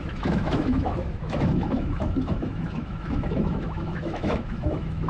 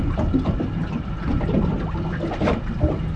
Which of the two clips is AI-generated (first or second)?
first